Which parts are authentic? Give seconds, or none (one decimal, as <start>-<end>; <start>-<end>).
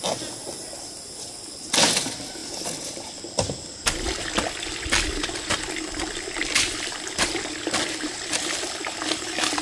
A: 0.0-9.6